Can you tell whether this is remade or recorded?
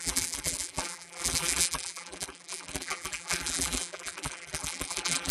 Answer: remade